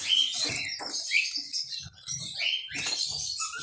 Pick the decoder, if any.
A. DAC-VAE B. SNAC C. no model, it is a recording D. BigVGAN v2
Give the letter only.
C